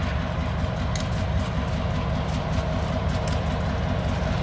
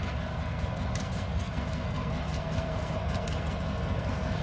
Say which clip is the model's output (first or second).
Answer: second